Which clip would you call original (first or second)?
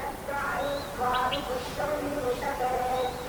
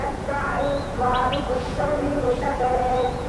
first